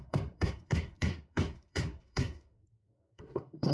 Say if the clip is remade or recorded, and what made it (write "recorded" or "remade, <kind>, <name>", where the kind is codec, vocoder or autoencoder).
remade, codec, SNAC